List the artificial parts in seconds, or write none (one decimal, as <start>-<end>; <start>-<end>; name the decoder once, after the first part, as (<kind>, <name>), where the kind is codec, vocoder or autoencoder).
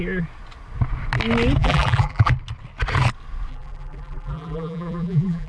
1.6-2.3 (vocoder, BigVGAN v2); 3.5-5.5